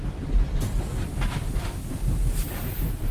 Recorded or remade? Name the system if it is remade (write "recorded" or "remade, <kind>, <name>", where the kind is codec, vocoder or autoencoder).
recorded